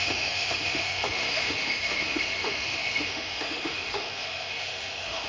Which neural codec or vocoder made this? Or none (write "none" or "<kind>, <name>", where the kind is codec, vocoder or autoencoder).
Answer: autoencoder, DAC-VAE